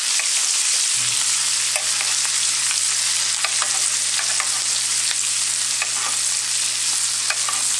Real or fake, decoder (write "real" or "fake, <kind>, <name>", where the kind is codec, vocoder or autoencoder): real